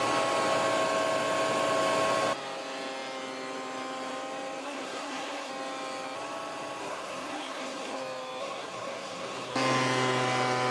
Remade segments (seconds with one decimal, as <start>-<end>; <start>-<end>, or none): 4.6-5.5; 6.8-8.0; 8.4-9.5